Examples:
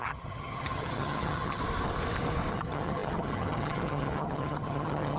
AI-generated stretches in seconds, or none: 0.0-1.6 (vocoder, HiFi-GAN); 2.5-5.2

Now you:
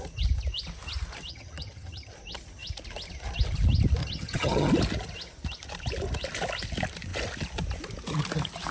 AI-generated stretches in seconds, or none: 1.3-2.1 (vocoder, HiFi-GAN); 4.0-4.7

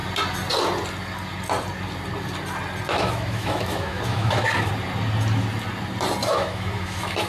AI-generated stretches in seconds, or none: 2.9-4.7 (autoencoder, DAC-VAE); 6.2-7.3

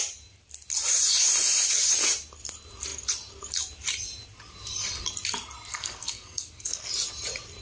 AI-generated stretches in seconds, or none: 5.7-6.9 (codec, SNAC)